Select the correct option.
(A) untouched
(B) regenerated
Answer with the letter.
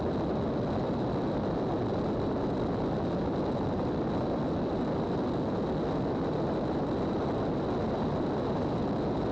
A